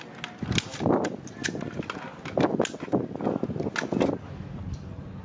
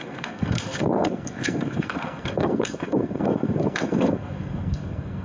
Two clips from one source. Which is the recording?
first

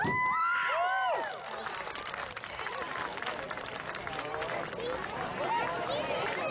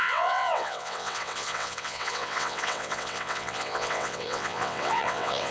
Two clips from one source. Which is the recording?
first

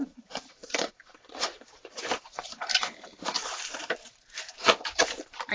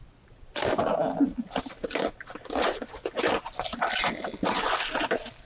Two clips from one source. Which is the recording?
second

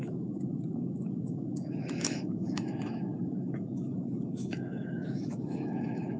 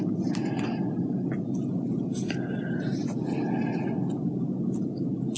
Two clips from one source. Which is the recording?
second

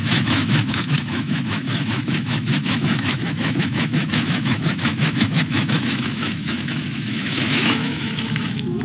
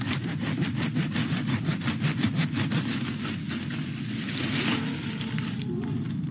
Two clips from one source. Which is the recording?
second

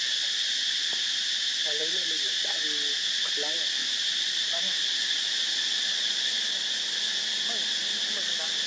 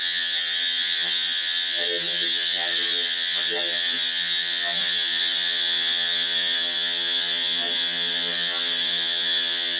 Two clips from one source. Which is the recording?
first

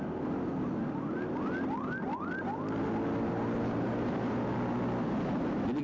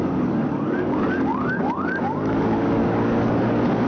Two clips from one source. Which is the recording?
first